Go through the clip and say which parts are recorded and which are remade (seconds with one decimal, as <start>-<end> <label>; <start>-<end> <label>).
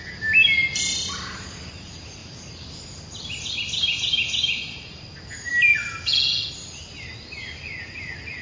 0.0-8.4 recorded